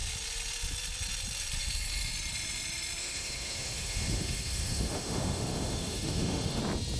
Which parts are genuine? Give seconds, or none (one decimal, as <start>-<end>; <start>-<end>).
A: 0.0-3.0; 6.6-7.0